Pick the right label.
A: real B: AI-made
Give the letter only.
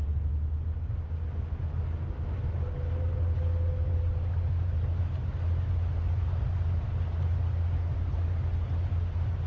A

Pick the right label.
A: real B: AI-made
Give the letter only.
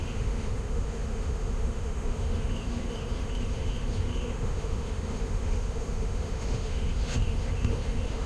B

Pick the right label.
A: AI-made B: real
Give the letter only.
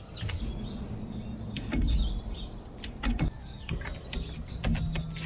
B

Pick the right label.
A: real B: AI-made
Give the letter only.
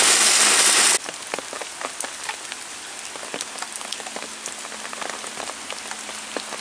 A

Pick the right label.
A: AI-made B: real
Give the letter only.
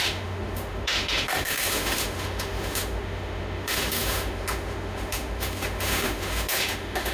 A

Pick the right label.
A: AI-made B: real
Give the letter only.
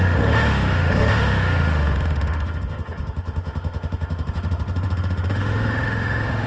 A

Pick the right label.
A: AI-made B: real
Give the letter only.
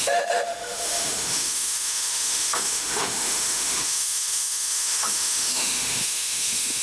A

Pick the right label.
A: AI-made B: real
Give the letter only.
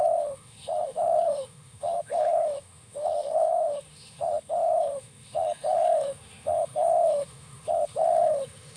A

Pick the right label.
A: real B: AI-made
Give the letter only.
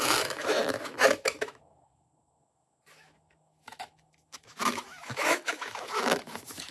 B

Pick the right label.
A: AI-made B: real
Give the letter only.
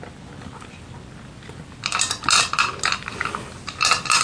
B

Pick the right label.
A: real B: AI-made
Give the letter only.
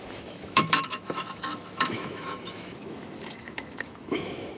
B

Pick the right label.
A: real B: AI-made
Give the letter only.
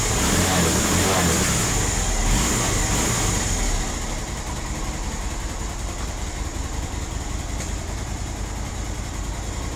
A